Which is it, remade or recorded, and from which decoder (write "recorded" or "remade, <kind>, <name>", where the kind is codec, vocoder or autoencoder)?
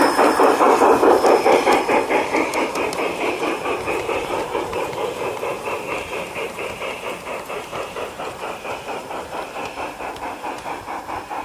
remade, vocoder, BigVGAN v2